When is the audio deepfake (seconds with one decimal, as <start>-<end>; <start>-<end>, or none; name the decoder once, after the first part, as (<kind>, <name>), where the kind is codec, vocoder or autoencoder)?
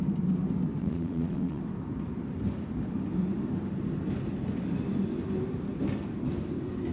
0.8-1.6 (vocoder, Vocos)